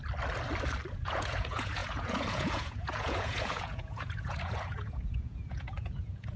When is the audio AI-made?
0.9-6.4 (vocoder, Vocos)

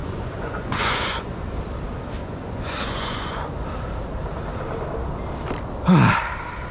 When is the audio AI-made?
0.0-1.4 (vocoder, Vocos); 2.2-3.5

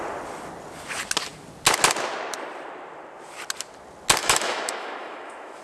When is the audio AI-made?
4.2-5.6 (autoencoder, DAC-VAE)

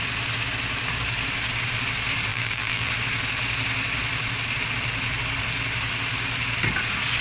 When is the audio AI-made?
2.3-2.9 (vocoder, BigVGAN v2)

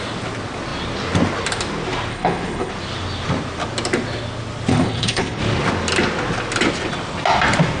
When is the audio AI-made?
2.1-2.7 (codec, HILCodec); 4.7-5.4